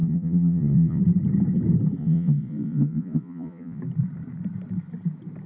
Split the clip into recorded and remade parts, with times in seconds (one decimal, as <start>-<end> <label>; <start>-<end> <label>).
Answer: 0.0-1.0 remade; 1.0-2.0 recorded; 2.0-3.8 remade; 3.8-5.5 recorded